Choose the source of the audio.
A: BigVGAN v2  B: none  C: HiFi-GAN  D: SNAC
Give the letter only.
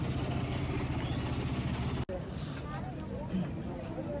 B